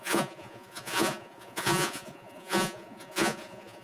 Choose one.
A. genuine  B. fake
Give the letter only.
B